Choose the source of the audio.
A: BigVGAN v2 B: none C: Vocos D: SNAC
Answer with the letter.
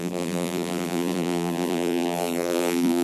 A